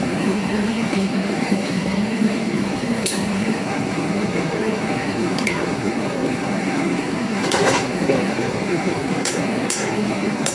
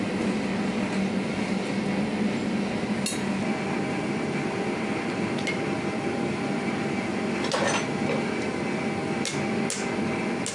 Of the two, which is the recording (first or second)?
second